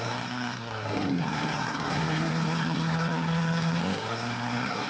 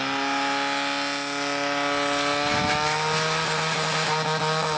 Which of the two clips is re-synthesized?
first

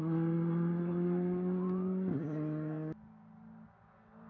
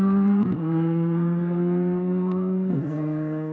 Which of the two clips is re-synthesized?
second